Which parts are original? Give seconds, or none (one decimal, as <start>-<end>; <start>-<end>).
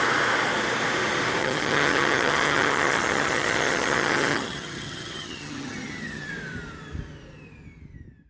0.0-1.4; 6.3-8.3